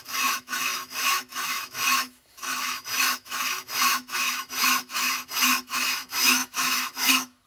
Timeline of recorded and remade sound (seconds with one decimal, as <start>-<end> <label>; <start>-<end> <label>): 0.0-7.5 remade